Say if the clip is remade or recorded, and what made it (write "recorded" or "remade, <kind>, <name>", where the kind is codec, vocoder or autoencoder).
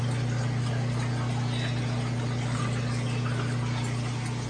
recorded